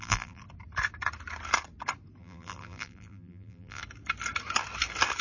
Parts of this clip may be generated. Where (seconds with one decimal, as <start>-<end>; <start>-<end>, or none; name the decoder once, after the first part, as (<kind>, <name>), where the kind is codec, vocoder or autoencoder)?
0.0-0.4 (vocoder, BigVGAN v2); 2.2-3.8

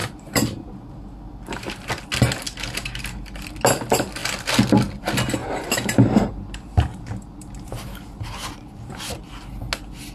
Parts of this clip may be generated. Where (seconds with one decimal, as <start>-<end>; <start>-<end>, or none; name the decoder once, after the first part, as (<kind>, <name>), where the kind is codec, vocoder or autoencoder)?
5.4-8.8 (vocoder, BigVGAN v2)

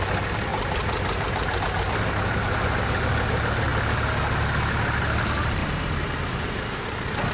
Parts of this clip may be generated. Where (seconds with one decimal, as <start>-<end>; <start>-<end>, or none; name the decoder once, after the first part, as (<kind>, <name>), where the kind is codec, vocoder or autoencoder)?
0.5-1.6 (vocoder, BigVGAN v2); 5.6-7.3

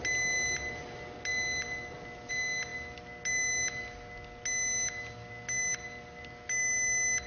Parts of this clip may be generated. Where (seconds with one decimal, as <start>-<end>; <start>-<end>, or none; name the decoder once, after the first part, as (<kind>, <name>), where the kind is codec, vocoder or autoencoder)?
none